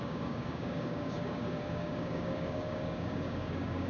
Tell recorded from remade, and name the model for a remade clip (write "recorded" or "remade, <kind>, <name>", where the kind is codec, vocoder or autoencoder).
remade, codec, DAC